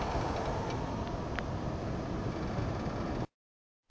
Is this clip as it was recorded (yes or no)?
yes